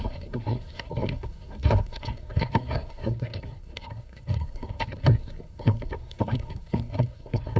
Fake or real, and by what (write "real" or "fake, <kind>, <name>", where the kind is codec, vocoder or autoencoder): fake, codec, SNAC